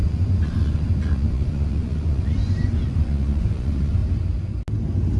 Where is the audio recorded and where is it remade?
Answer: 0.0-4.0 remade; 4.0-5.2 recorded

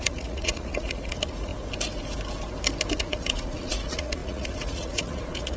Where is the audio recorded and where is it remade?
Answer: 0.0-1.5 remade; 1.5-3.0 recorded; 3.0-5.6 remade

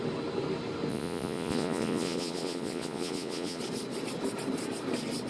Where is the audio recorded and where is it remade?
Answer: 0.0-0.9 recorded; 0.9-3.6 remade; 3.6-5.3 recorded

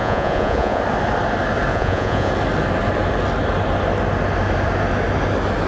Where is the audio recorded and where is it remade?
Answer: 0.0-0.8 remade; 0.8-1.7 recorded; 1.7-2.3 remade; 2.3-5.7 recorded